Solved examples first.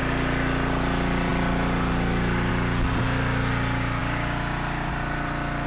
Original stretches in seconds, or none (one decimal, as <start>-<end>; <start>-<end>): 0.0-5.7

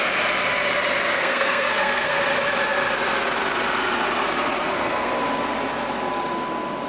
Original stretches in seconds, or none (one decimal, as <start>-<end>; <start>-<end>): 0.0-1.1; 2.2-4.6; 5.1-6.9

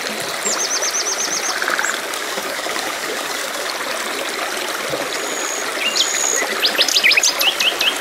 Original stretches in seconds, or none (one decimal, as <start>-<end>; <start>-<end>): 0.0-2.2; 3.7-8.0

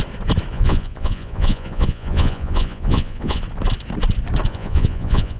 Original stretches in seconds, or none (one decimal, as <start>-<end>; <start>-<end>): 0.0-0.5; 3.4-4.5

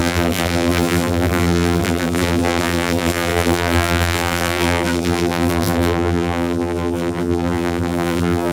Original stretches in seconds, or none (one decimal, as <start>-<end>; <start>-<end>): none

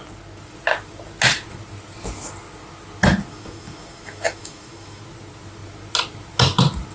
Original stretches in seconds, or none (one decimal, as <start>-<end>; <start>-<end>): 0.0-3.3; 5.0-6.9

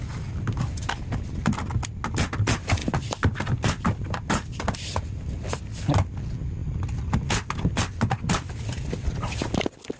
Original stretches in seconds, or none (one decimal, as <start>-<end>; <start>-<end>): 0.0-2.8; 5.6-6.6; 7.3-10.0